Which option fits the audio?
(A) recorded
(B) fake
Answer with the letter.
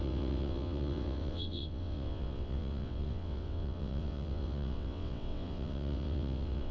B